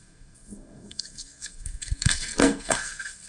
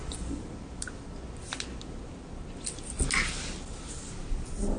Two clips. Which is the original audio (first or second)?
second